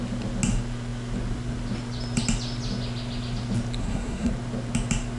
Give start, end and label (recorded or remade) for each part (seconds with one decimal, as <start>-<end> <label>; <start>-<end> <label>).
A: 0.0-3.8 recorded; 3.8-4.3 remade; 4.3-5.2 recorded